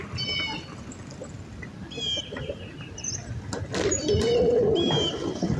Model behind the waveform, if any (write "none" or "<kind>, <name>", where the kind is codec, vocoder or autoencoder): none